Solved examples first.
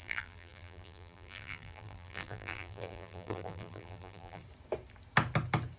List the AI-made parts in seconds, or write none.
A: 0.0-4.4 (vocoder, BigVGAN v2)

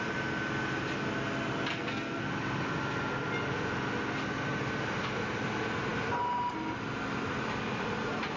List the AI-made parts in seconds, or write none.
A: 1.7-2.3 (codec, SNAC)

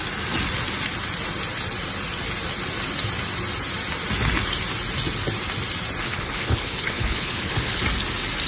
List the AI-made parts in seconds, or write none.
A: 6.0-7.8 (codec, HILCodec)